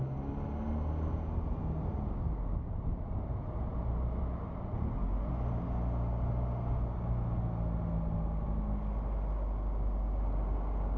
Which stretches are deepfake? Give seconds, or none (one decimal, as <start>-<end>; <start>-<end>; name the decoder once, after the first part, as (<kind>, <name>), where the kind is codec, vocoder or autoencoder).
none